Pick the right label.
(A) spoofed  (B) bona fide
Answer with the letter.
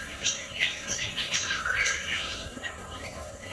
A